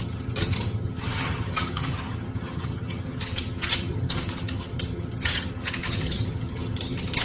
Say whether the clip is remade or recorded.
remade